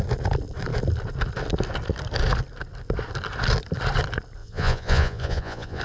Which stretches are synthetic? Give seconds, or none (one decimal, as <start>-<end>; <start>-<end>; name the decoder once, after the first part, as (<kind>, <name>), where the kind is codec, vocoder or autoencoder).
4.4-5.8 (vocoder, Vocos)